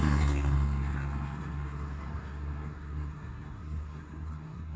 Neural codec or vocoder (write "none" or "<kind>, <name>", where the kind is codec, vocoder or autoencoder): codec, SNAC